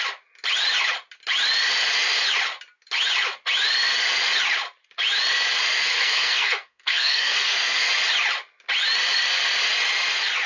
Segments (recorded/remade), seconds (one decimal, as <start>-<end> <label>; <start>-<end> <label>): 0.0-5.8 recorded; 5.8-7.9 remade; 7.9-10.5 recorded